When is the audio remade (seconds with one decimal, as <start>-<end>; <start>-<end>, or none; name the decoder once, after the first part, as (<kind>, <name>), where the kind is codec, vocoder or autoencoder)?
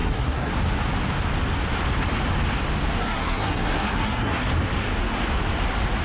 0.0-0.5 (codec, SNAC); 3.0-4.5